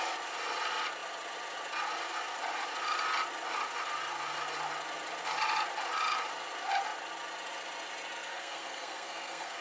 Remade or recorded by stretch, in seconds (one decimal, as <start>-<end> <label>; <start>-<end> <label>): 0.0-8.3 recorded; 8.3-9.6 remade